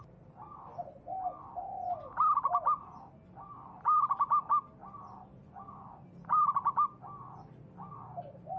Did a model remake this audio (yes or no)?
no